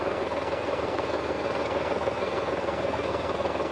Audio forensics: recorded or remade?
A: remade